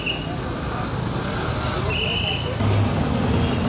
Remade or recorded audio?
recorded